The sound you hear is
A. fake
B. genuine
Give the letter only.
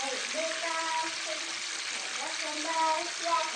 B